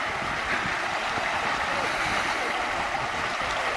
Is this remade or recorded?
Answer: recorded